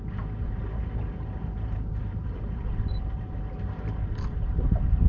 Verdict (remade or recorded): remade